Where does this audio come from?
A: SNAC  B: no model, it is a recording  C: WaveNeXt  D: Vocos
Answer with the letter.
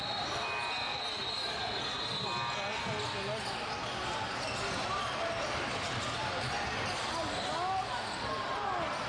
B